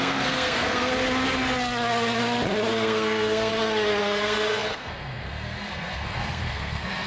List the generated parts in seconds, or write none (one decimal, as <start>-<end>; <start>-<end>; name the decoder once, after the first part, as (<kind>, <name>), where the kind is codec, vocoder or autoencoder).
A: 0.0-0.9 (codec, SNAC); 2.7-3.5; 4.0-7.1